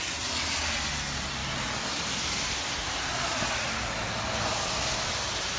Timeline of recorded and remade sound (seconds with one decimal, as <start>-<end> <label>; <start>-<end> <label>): 0.0-5.6 recorded